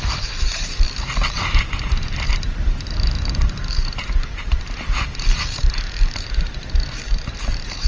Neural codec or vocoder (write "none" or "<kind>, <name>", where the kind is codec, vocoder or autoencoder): vocoder, BigVGAN v2